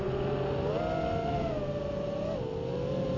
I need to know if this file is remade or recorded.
recorded